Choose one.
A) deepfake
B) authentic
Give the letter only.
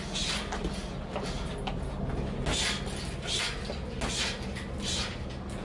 B